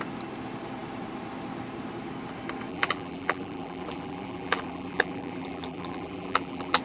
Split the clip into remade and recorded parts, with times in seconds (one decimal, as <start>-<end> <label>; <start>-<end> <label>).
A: 0.0-2.7 recorded; 2.7-6.8 remade